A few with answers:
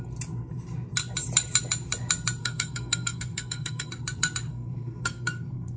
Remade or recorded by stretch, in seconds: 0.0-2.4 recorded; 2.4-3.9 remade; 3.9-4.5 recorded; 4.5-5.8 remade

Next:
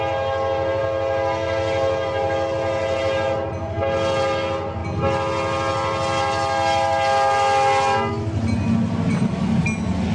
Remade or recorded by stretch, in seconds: 0.0-10.1 recorded